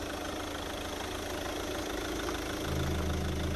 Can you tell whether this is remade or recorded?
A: recorded